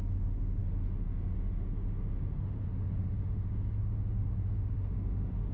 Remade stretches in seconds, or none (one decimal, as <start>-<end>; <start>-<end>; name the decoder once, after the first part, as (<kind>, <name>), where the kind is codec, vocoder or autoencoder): 0.0-5.5 (autoencoder, DAC-VAE)